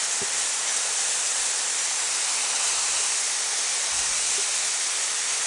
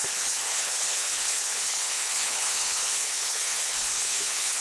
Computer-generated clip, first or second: second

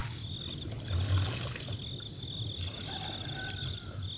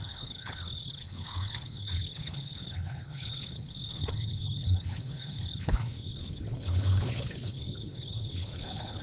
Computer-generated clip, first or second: second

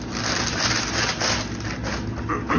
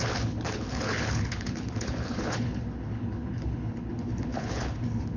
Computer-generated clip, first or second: second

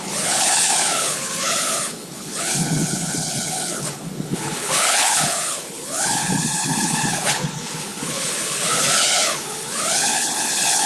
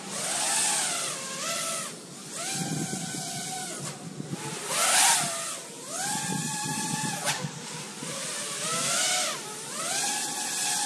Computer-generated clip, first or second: first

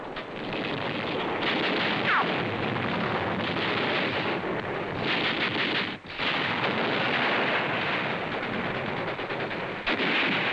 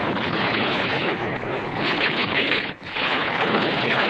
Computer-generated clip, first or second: second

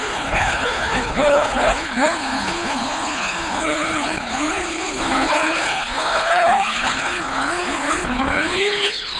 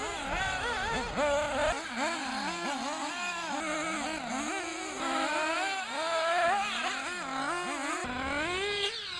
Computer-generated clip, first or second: first